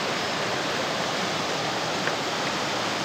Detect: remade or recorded recorded